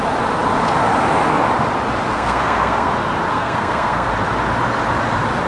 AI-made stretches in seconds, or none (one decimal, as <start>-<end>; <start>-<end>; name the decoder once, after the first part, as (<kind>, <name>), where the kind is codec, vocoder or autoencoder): 2.1-2.9 (codec, SNAC); 3.3-4.1